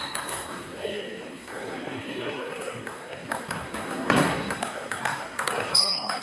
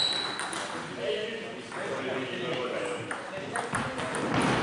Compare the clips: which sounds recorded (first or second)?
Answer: second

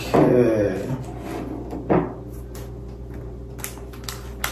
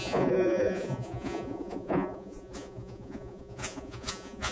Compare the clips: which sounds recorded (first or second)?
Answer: first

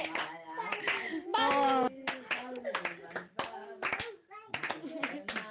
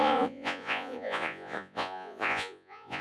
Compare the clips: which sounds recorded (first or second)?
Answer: first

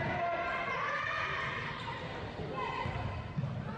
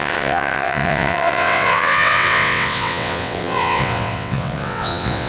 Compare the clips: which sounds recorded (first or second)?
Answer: first